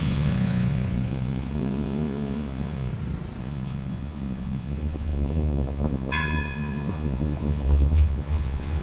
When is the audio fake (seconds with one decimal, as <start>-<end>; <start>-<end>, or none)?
0.0-2.9; 3.4-8.8